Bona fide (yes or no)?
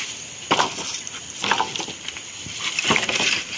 no